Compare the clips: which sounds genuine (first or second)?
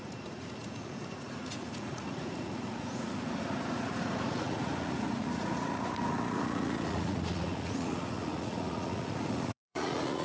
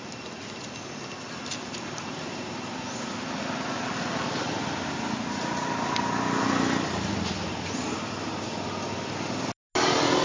second